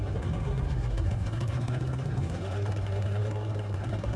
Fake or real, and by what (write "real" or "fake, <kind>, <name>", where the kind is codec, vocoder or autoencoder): fake, codec, SNAC